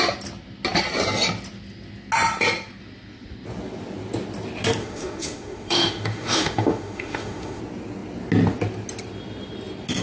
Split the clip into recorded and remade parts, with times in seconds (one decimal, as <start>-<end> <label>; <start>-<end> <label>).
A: 0.0-4.8 recorded; 4.8-7.6 remade; 7.6-10.0 recorded